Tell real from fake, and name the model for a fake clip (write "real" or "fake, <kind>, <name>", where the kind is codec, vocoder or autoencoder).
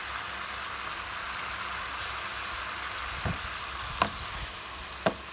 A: real